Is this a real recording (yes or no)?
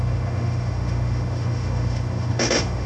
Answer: no